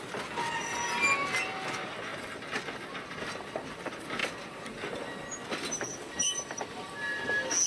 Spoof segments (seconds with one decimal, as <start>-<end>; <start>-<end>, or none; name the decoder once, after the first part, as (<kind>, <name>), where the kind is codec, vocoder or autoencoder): 2.1-3.8 (vocoder, BigVGAN v2); 4.2-7.2